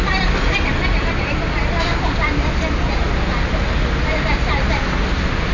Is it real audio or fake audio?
real